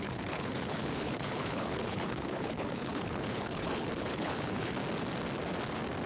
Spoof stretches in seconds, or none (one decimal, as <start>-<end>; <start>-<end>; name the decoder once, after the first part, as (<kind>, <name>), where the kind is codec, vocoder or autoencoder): 0.0-4.8 (codec, HILCodec)